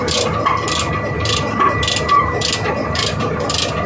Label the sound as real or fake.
real